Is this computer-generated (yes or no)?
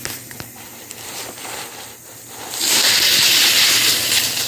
yes